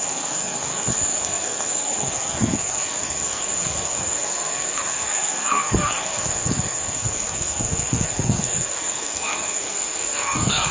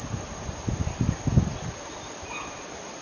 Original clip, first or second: second